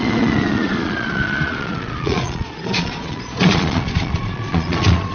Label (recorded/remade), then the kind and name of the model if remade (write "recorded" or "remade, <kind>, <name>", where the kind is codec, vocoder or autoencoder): remade, vocoder, Vocos